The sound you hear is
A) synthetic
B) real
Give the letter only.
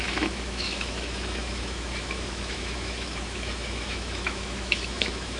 A